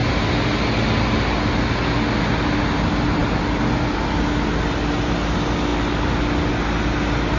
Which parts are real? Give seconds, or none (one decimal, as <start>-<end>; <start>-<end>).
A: 0.0-7.4